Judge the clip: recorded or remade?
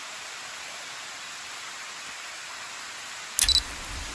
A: recorded